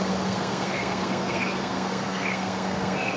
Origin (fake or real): fake